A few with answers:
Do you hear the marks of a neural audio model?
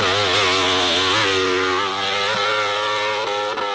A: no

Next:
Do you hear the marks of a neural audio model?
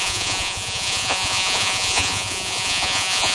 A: yes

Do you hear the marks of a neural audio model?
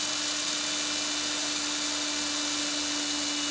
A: no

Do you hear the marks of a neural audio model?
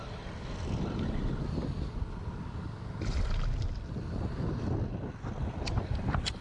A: no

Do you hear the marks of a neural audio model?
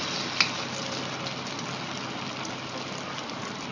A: no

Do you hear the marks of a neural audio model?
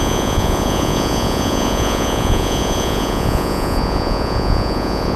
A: yes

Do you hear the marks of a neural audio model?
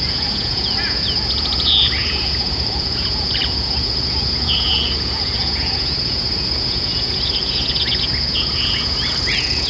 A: yes